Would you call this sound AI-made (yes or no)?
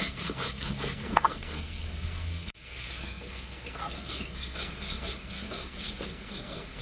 yes